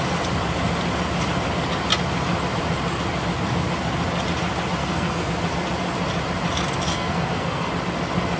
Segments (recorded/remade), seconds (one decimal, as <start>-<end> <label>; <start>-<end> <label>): 0.0-4.8 recorded; 4.8-5.3 remade; 5.3-6.9 recorded; 6.9-7.7 remade; 7.7-8.4 recorded